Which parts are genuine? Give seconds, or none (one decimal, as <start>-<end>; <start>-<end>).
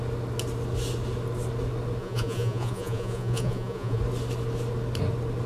0.0-2.0; 4.0-5.5